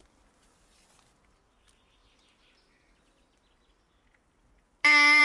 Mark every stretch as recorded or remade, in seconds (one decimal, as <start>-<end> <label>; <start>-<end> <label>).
0.0-5.2 recorded